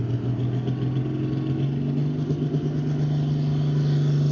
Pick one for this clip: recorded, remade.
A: recorded